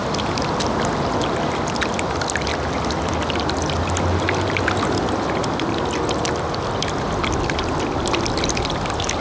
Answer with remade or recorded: recorded